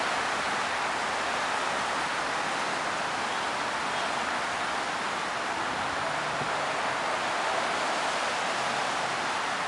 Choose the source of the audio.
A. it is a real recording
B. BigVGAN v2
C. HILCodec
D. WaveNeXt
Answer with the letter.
A